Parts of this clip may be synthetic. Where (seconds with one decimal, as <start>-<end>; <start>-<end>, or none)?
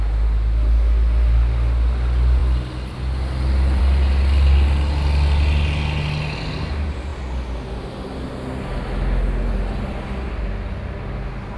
none